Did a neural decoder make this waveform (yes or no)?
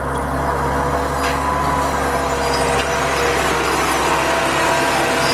no